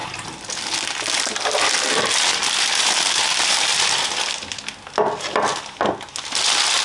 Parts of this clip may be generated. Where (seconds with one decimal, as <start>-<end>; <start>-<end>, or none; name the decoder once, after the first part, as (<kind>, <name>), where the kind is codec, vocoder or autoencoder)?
none